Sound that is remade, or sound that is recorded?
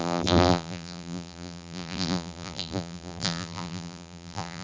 remade